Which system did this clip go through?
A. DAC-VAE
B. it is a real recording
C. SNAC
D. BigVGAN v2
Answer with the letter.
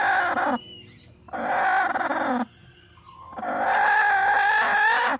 B